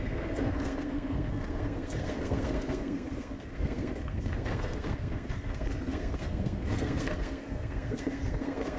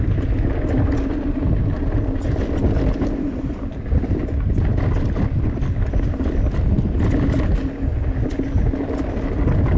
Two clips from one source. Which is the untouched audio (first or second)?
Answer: second